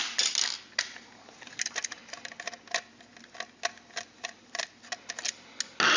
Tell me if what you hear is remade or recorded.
recorded